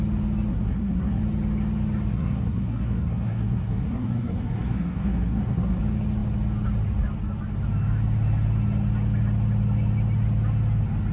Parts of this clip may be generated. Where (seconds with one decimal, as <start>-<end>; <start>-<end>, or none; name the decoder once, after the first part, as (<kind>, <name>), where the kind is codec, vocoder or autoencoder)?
0.5-1.2 (codec, SNAC); 2.1-5.8